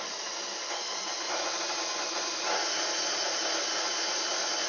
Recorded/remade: recorded